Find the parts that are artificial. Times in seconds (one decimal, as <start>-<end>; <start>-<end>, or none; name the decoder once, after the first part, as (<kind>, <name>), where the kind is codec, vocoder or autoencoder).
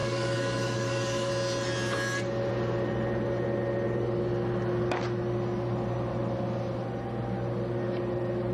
0.0-1.3 (codec, DAC)